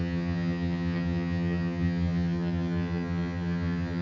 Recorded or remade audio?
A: remade